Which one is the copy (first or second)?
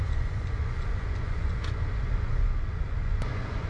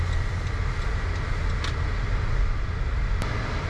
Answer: first